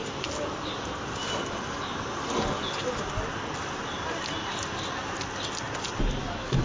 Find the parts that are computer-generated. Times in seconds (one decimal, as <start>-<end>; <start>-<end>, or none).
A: none